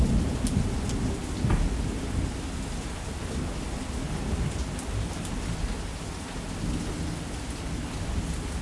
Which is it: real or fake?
real